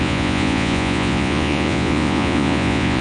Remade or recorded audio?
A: remade